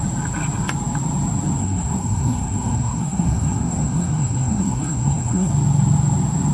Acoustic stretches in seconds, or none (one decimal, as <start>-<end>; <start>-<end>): 0.0-1.6; 5.5-6.5